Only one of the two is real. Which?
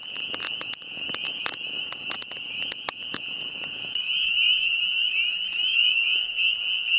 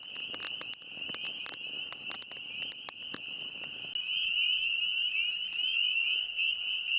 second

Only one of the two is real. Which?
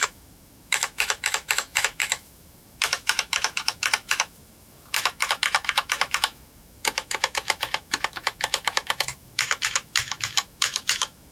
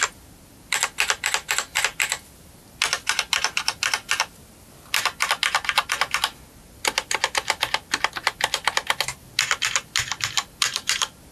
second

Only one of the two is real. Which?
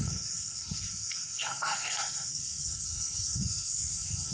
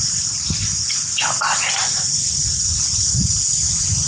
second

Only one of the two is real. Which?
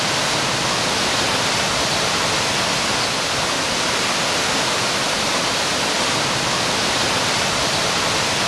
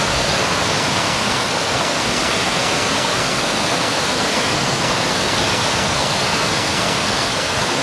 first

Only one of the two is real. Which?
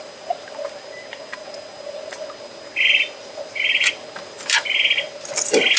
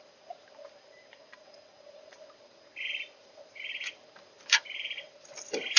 first